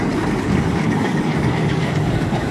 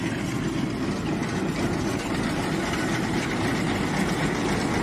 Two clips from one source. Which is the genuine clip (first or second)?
second